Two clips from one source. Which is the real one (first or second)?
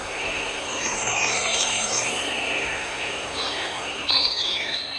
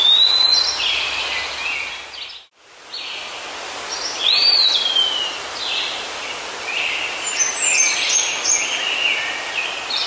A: second